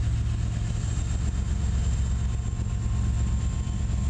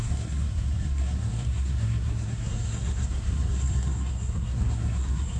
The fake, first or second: second